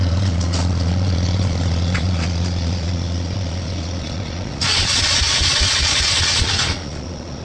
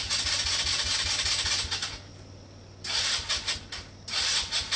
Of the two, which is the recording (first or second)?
second